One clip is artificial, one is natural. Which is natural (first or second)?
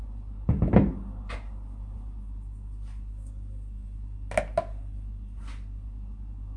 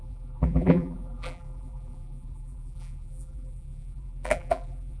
first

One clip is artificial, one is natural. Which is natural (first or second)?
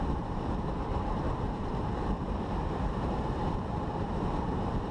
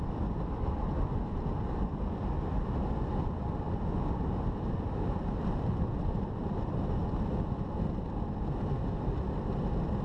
second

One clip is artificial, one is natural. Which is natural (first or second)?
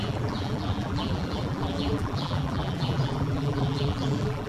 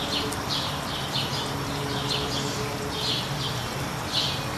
second